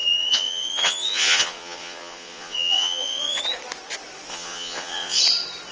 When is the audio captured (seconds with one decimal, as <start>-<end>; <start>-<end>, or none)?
3.4-4.3; 5.2-5.7